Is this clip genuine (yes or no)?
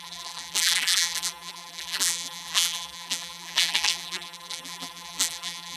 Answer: no